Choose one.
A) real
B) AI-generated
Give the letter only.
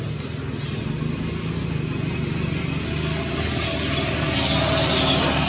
A